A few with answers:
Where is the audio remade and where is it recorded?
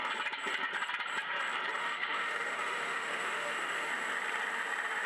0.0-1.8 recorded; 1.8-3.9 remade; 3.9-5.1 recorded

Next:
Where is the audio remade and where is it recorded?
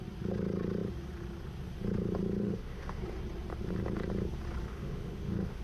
0.0-2.4 recorded; 2.4-3.0 remade; 3.0-4.7 recorded; 4.7-5.6 remade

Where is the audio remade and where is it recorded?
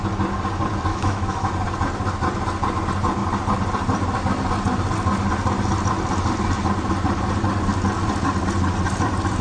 0.0-0.9 recorded; 0.9-1.5 remade; 1.5-9.4 recorded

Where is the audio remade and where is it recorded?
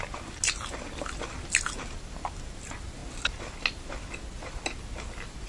0.0-5.5 recorded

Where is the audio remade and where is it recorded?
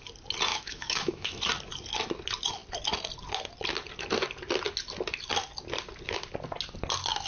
0.0-0.5 recorded; 0.5-1.4 remade; 1.4-7.3 recorded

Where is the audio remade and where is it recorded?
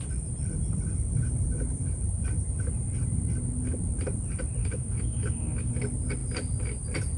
0.0-4.6 recorded; 4.6-5.7 remade; 5.7-7.2 recorded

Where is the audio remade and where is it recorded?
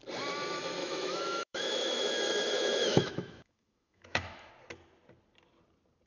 0.0-0.8 recorded; 0.8-4.5 remade; 4.5-6.1 recorded